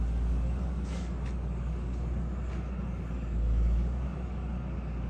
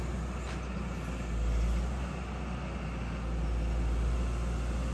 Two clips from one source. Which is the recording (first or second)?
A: second